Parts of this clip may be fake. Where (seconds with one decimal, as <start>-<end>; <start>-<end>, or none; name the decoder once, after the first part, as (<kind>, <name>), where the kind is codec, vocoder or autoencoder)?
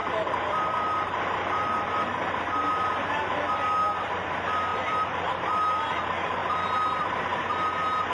0.0-2.6 (vocoder, BigVGAN v2); 4.7-5.3